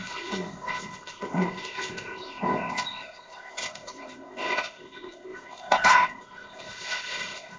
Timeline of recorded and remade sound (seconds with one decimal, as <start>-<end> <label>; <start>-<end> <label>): 0.0-7.6 remade